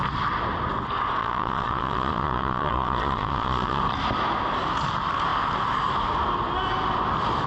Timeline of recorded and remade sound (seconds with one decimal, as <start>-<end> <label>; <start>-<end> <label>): 0.0-1.2 recorded; 1.2-3.8 remade; 3.8-7.5 recorded